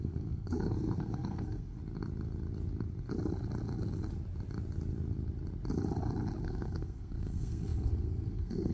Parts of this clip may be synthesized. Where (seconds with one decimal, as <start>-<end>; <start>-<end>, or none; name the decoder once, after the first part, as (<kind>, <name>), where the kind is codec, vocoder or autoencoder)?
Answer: 0.0-1.8 (codec, SNAC); 6.4-8.7